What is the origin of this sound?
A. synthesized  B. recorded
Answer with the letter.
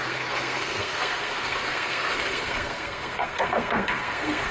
A